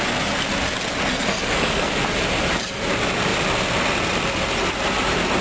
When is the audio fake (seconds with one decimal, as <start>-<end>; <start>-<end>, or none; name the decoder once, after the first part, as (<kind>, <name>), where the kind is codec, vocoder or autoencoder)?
1.1-1.9 (codec, SNAC)